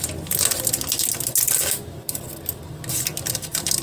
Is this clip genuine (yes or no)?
yes